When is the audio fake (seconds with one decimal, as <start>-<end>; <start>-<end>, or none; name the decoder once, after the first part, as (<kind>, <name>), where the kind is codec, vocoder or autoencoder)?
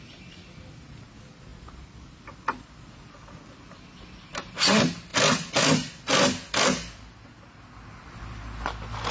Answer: none